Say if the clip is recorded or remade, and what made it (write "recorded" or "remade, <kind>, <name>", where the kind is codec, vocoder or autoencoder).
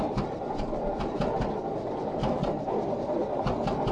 recorded